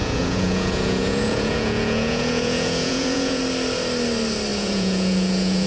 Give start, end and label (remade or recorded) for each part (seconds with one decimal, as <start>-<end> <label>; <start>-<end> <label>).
0.0-3.4 remade; 3.4-4.5 recorded; 4.5-5.7 remade